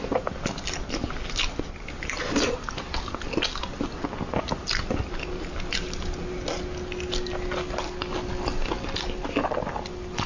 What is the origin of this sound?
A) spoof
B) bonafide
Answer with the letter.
B